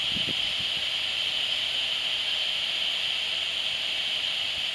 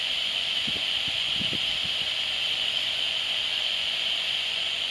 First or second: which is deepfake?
second